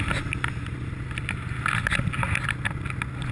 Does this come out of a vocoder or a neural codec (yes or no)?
no